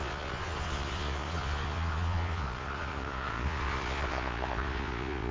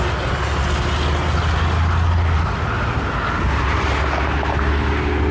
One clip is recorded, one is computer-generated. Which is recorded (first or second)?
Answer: second